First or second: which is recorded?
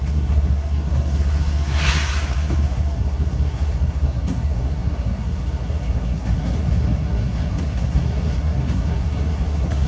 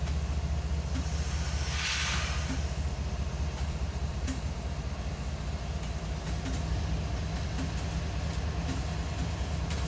second